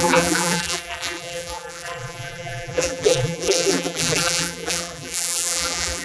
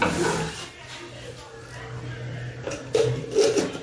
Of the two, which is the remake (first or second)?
first